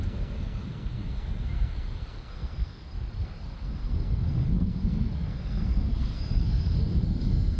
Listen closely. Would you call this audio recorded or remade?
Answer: remade